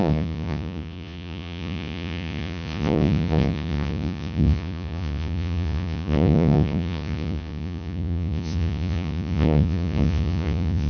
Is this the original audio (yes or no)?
no